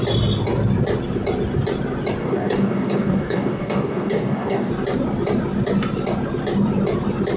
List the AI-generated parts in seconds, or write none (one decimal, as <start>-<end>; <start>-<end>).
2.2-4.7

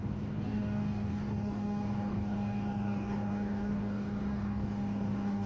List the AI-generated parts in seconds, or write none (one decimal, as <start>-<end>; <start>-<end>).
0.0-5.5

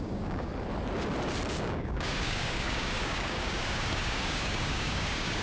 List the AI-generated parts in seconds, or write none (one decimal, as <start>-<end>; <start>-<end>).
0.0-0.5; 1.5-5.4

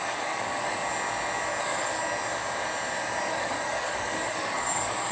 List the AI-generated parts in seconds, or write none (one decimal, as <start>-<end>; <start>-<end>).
0.0-0.8; 1.6-2.0; 3.3-5.1